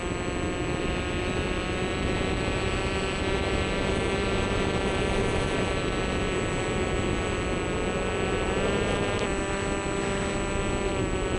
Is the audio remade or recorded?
recorded